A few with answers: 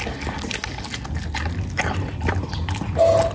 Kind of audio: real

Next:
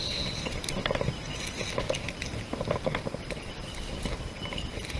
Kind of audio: real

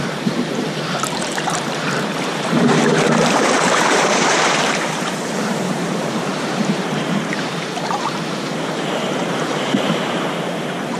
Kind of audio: fake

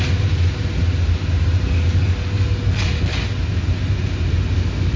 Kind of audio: real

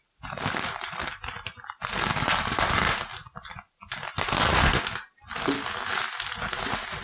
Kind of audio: real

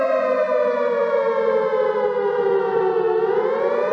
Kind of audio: real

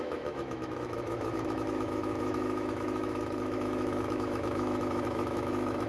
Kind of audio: fake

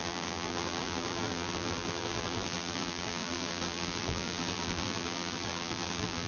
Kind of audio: fake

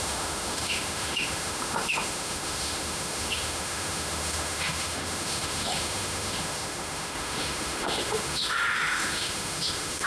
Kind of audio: fake